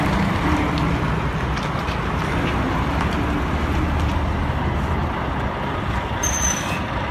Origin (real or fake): real